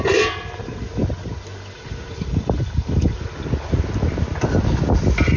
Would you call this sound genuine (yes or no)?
yes